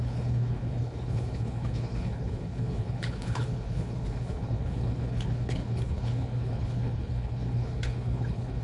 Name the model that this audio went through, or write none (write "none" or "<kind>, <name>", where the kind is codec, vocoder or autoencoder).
codec, HILCodec